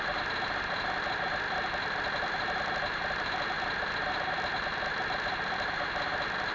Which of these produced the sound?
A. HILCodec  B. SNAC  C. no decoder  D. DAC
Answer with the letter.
C